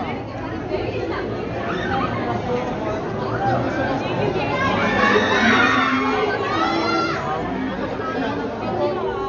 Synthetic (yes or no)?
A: no